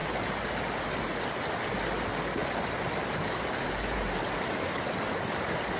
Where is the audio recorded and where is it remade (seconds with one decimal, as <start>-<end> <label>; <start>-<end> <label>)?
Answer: 0.0-5.8 recorded